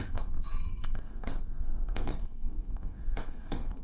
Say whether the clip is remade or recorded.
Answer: remade